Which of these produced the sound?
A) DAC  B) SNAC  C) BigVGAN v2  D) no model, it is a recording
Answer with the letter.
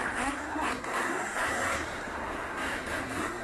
B